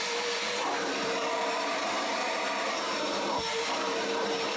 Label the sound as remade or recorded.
remade